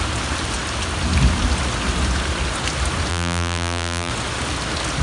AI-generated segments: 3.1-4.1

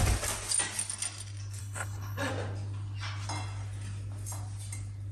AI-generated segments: 1.6-2.3

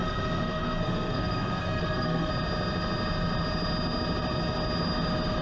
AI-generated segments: 0.0-2.3

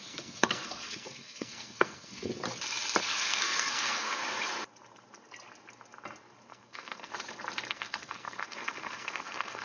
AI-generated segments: 0.0-2.3; 3.0-4.2; 6.5-7.1; 7.7-9.6

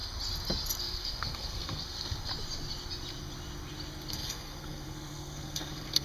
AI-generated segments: 0.8-2.3; 4.1-6.0

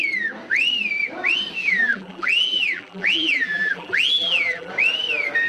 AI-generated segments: 1.6-4.7